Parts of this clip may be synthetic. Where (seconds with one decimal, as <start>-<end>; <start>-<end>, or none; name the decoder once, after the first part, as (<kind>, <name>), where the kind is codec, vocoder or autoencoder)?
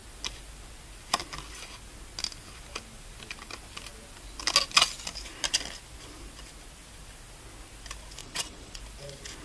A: 8.2-8.8 (vocoder, WaveNeXt)